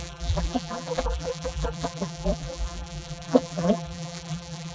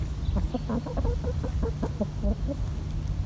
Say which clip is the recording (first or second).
second